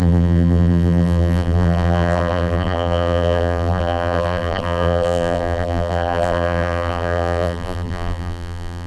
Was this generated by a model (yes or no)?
yes